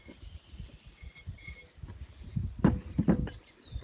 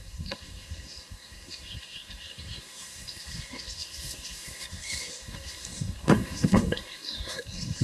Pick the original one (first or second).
first